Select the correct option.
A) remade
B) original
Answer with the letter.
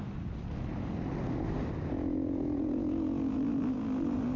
B